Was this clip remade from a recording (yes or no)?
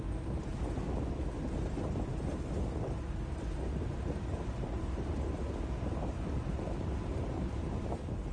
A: no